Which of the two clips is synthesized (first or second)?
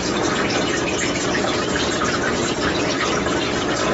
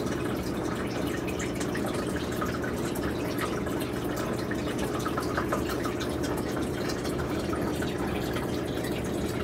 first